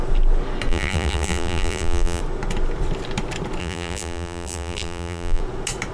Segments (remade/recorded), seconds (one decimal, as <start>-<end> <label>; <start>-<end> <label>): 0.0-0.7 recorded; 0.7-2.2 remade; 2.2-3.6 recorded; 3.6-5.4 remade; 5.4-5.9 recorded